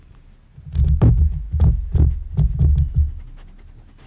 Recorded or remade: recorded